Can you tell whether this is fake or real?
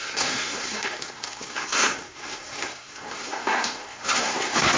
fake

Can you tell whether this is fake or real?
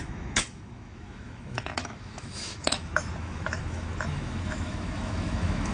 fake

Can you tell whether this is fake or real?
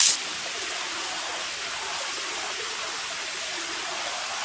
real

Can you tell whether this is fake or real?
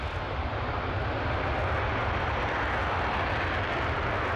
real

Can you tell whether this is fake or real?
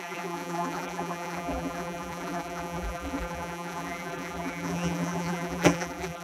fake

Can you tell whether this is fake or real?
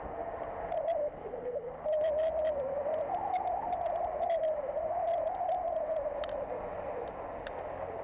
real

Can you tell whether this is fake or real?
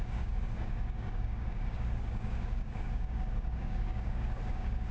fake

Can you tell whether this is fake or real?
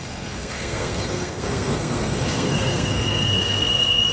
fake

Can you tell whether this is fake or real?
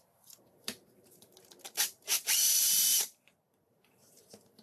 fake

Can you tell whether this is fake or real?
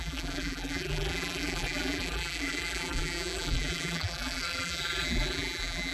fake